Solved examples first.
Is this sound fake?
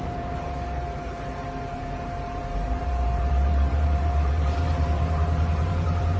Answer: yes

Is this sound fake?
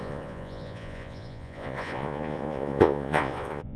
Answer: yes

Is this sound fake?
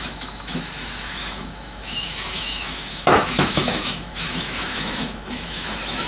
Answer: yes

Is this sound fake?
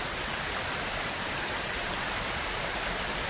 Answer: no